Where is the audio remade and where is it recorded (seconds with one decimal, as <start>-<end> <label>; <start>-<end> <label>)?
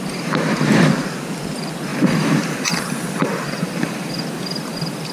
0.0-1.9 recorded; 1.9-5.1 remade